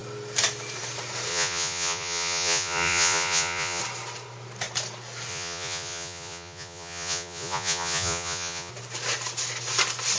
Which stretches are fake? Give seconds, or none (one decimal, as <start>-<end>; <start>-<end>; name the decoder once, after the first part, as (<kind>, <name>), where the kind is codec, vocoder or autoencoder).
1.3-3.8 (vocoder, Vocos); 5.3-8.7

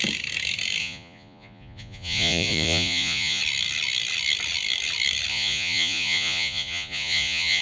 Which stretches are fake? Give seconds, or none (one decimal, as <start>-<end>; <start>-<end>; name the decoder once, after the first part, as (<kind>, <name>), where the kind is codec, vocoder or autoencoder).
0.8-3.4 (vocoder, Vocos); 5.3-7.6